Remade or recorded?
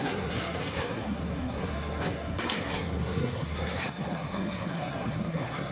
remade